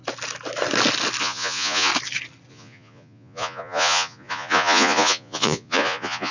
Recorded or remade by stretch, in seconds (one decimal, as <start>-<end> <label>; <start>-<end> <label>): 0.0-1.2 recorded; 1.2-1.9 remade; 1.9-2.5 recorded; 2.5-6.3 remade